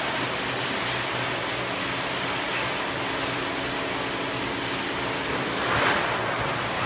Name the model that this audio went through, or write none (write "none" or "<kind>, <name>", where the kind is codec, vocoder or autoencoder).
none